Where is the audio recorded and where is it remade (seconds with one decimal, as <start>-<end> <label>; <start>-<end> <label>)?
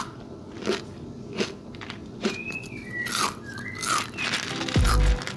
0.0-2.0 recorded; 2.0-2.9 remade; 2.9-5.4 recorded